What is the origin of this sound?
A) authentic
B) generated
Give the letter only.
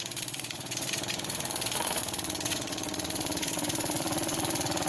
B